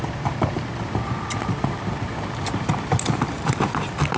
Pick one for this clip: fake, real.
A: real